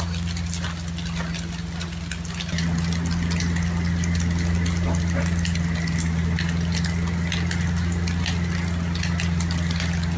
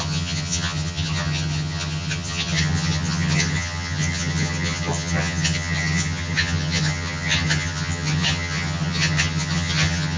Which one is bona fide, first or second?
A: first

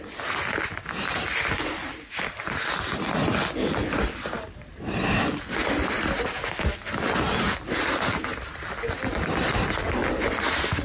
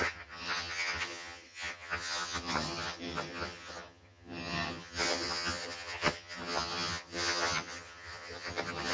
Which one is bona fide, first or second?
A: first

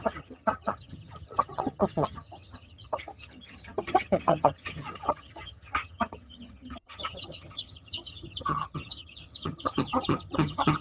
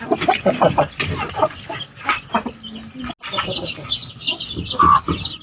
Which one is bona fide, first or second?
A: second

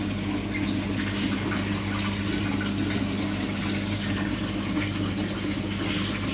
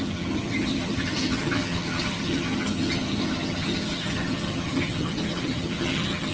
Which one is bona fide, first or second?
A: first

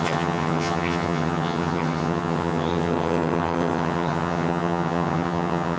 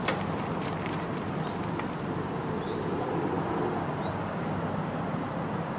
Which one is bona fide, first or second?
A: second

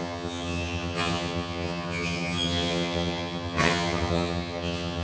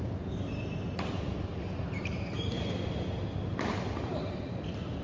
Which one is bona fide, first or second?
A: second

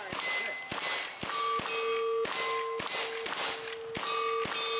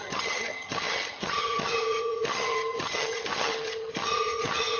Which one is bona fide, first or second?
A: first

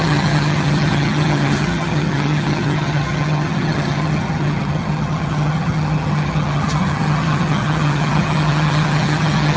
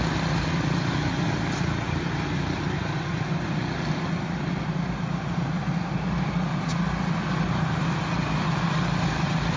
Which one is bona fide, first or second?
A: second